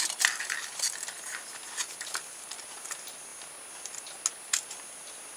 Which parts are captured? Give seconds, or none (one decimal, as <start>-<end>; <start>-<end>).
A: 0.0-5.4